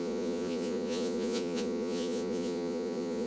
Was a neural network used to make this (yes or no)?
yes